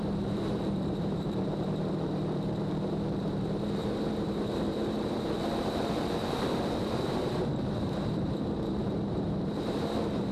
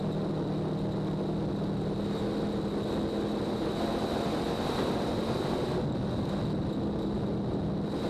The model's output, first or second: first